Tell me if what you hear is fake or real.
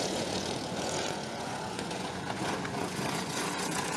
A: fake